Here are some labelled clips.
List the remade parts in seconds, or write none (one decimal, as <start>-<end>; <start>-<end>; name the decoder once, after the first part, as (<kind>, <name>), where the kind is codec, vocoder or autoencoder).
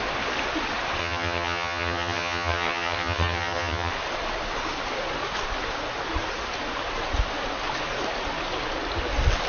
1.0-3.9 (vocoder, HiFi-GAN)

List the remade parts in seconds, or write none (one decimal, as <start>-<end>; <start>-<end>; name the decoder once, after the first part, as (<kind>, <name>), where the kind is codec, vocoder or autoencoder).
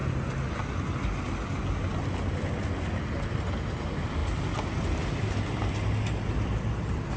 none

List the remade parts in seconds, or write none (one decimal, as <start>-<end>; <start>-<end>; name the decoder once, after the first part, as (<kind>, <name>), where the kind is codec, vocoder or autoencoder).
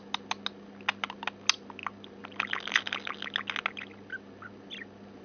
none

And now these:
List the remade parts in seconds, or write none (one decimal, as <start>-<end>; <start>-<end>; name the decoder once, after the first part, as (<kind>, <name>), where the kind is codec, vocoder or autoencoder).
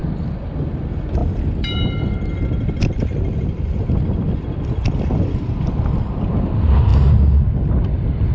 none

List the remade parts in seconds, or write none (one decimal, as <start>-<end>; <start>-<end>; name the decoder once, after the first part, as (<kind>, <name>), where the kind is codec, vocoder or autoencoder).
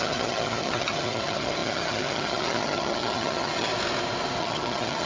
0.0-3.7 (vocoder, HiFi-GAN); 4.4-5.1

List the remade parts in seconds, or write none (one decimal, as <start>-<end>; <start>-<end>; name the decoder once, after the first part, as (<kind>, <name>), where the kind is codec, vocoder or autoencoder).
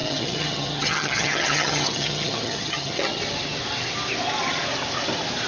0.0-3.2 (vocoder, HiFi-GAN)